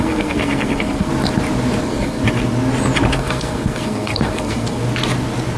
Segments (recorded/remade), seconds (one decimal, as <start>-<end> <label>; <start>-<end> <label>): 0.0-1.1 remade; 1.1-1.8 recorded; 1.8-2.2 remade; 2.2-3.1 recorded; 3.1-4.8 remade; 4.8-5.6 recorded